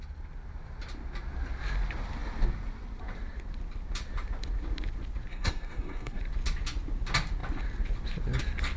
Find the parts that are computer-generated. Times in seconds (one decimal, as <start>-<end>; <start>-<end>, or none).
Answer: 5.3-6.2

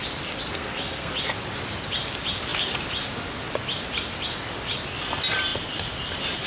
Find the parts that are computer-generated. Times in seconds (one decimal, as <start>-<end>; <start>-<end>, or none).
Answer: 0.5-1.1

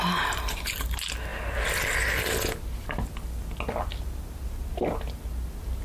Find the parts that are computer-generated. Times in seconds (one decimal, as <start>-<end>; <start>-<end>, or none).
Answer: none

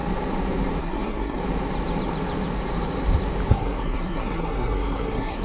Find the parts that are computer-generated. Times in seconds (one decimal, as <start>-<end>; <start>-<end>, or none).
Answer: 0.8-1.4; 3.5-5.4

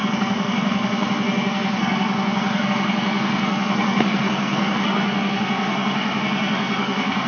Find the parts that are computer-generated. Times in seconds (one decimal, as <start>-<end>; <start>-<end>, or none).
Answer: 0.0-7.3

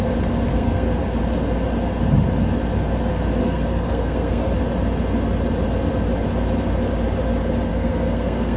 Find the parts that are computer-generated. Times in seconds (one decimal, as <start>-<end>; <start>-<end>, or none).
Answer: 0.5-1.0; 3.4-4.5; 7.7-8.6